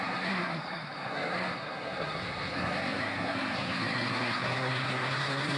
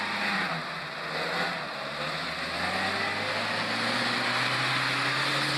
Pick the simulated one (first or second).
first